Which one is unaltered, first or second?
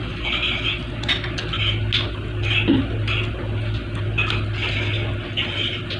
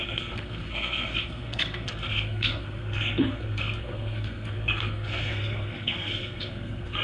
first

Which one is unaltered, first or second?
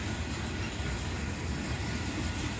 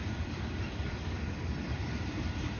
first